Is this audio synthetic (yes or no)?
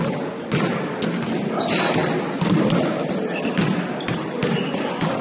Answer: no